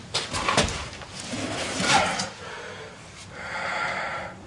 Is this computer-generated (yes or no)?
no